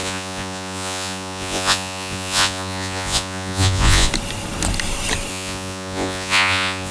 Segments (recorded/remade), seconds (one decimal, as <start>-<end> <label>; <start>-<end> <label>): 0.0-4.1 remade; 4.1-5.3 recorded; 5.3-6.9 remade